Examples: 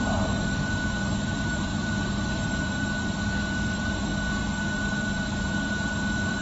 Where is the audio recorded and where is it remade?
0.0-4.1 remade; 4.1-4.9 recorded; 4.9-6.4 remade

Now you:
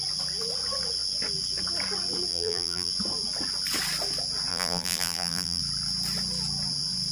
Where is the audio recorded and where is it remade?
0.0-2.3 recorded; 2.3-2.9 remade; 2.9-4.5 recorded; 4.5-5.6 remade; 5.6-7.1 recorded

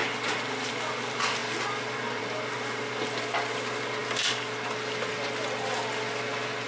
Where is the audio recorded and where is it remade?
0.0-6.7 recorded